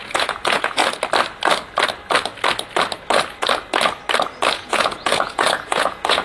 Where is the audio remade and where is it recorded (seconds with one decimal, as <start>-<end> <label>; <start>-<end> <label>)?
0.0-0.8 remade; 0.8-4.5 recorded; 4.5-6.2 remade